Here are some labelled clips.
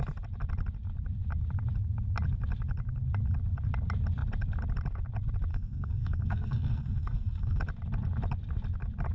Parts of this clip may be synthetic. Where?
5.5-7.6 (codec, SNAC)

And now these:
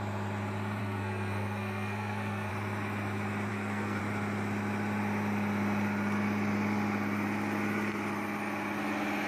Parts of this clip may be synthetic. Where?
0.8-2.5 (codec, SNAC); 3.5-4.0

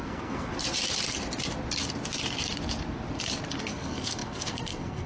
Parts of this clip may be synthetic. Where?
0.0-0.5 (codec, SNAC); 3.6-5.1